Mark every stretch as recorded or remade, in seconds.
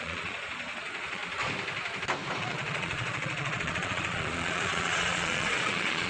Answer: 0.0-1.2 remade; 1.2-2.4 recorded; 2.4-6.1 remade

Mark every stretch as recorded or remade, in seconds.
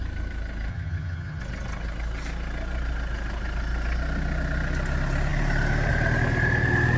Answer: 0.0-0.7 recorded; 0.7-1.4 remade; 1.4-7.0 recorded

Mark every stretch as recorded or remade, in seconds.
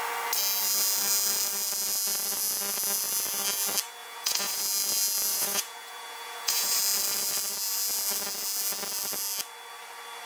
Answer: 0.0-4.0 recorded; 4.0-4.6 remade; 4.6-5.3 recorded; 5.3-6.8 remade; 6.8-10.3 recorded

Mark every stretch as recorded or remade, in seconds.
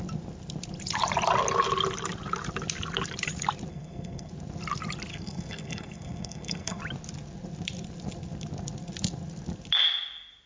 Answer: 0.0-3.7 recorded; 3.7-4.3 remade; 4.3-5.1 recorded; 5.1-6.8 remade; 6.8-10.5 recorded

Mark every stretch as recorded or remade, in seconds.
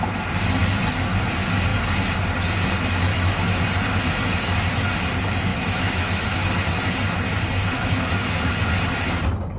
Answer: 0.0-3.1 recorded; 3.1-3.6 remade; 3.6-5.5 recorded; 5.5-6.5 remade; 6.5-9.6 recorded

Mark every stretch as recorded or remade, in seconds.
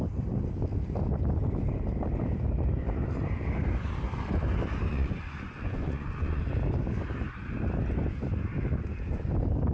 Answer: 0.0-4.9 recorded; 4.9-6.4 remade; 6.4-9.7 recorded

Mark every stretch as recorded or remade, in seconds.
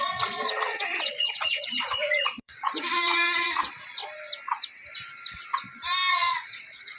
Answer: 0.0-4.0 remade; 4.0-6.1 recorded; 6.1-7.0 remade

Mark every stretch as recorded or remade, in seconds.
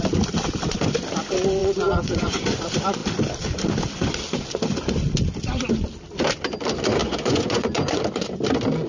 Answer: 0.0-1.6 recorded; 1.6-2.6 remade; 2.6-7.0 recorded; 7.0-8.0 remade; 8.0-8.9 recorded